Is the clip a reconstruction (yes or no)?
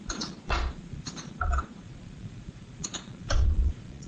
yes